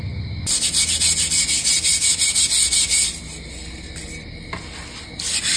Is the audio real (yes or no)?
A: yes